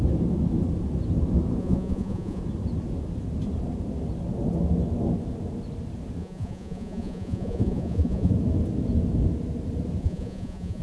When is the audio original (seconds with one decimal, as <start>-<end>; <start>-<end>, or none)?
0.0-1.6; 2.4-6.2; 8.3-10.0